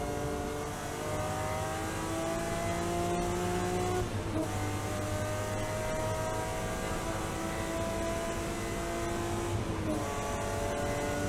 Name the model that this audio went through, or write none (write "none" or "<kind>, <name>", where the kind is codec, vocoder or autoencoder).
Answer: none